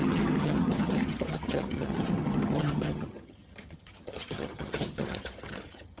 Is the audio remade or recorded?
remade